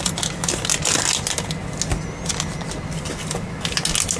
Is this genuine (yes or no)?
yes